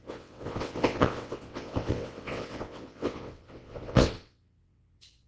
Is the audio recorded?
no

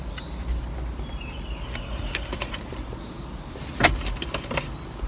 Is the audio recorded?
yes